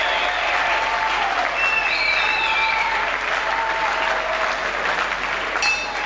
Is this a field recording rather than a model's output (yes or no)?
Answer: yes